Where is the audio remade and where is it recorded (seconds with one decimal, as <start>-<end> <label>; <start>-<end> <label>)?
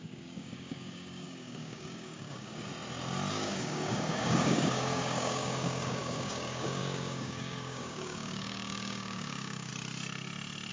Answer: 0.0-2.7 remade; 2.7-3.3 recorded; 3.3-9.7 remade; 9.7-10.7 recorded